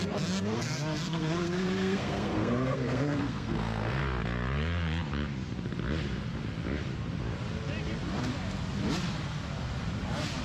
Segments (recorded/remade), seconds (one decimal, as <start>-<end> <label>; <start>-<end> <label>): 0.0-4.0 remade; 4.0-10.4 recorded